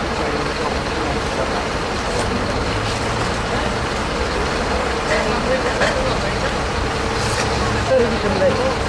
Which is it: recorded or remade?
recorded